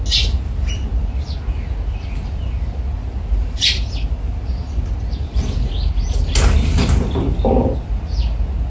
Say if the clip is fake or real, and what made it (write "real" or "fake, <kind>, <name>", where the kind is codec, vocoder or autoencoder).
real